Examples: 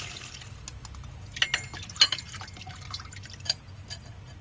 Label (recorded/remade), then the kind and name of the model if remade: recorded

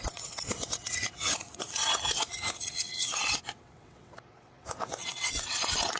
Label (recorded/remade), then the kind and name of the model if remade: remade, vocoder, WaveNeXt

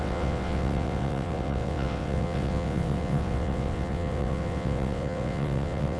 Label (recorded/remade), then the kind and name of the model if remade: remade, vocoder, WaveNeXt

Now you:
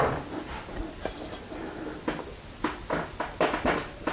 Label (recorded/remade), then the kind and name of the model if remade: recorded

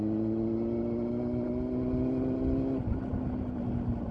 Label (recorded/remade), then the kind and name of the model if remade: recorded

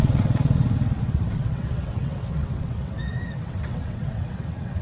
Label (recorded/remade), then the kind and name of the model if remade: remade, vocoder, WaveNeXt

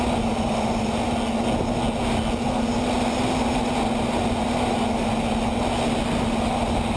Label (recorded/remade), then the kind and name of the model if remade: recorded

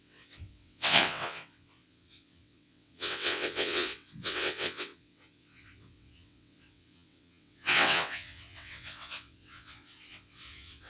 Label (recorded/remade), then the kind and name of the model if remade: remade, vocoder, WaveNeXt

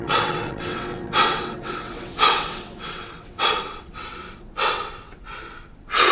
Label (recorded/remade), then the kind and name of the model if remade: remade, vocoder, WaveNeXt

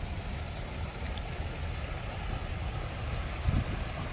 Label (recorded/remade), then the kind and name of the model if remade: recorded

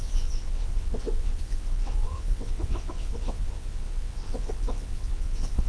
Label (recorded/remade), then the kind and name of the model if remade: remade, vocoder, WaveNeXt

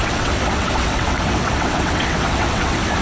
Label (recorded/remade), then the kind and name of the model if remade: remade, vocoder, WaveNeXt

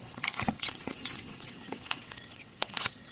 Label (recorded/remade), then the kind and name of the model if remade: remade, vocoder, WaveNeXt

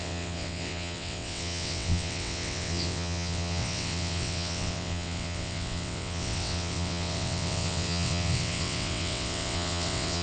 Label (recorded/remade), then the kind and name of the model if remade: remade, vocoder, WaveNeXt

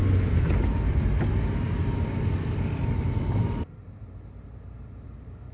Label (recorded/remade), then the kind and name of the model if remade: recorded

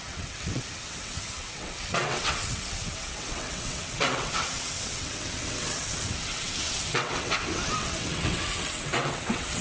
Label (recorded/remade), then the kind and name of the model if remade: remade, vocoder, WaveNeXt